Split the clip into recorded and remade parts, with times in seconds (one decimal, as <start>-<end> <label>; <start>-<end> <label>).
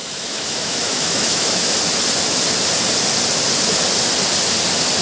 0.0-1.7 remade; 1.7-5.0 recorded